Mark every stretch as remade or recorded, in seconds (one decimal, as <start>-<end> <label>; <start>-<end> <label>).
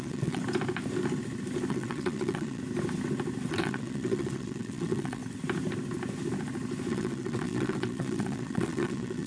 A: 0.0-0.4 remade; 0.4-1.7 recorded; 1.7-2.6 remade; 2.6-3.5 recorded; 3.5-5.2 remade; 5.2-6.9 recorded; 6.9-9.3 remade